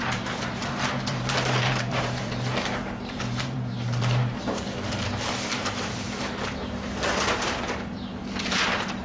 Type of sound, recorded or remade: remade